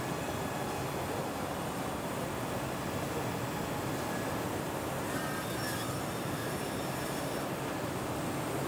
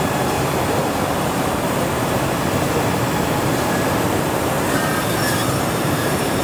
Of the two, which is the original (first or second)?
first